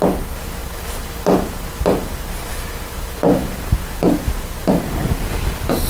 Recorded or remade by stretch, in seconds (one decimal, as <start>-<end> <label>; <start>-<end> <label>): 0.0-5.9 recorded